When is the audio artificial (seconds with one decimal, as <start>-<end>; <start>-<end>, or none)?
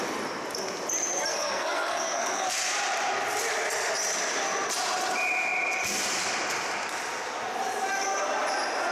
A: 1.3-2.5